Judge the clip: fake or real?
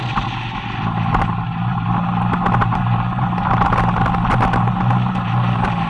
real